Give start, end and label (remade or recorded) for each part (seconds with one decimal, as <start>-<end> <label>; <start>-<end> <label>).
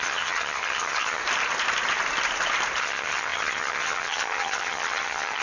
0.0-1.2 remade; 1.2-2.8 recorded; 2.8-5.4 remade